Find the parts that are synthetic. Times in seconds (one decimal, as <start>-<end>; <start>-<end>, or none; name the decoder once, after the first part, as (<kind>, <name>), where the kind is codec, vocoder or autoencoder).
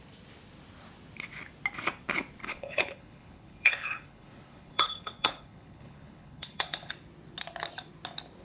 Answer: 2.4-6.9 (codec, HILCodec)